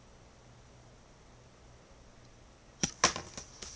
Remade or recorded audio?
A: recorded